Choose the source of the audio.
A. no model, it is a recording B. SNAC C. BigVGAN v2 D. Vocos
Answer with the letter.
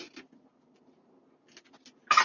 A